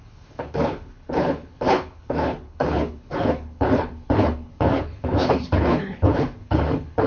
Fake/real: fake